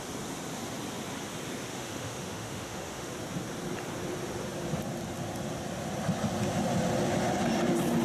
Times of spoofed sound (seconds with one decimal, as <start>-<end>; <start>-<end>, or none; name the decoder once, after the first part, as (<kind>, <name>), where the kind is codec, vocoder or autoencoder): 1.7-3.1 (autoencoder, DAC-VAE)